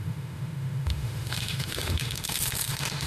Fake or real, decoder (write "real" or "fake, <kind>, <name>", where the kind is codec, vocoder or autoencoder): fake, autoencoder, DAC-VAE